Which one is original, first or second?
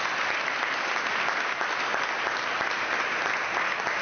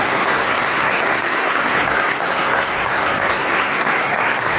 first